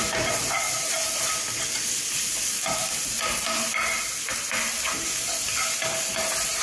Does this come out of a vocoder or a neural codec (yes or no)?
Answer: no